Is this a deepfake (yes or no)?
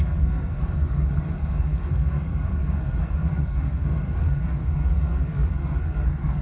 yes